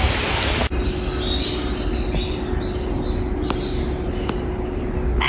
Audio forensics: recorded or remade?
recorded